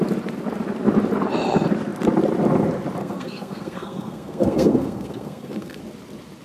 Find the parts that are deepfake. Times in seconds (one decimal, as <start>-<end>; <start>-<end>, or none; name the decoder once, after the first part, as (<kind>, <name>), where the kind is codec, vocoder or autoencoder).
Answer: 3.0-5.8 (codec, SNAC)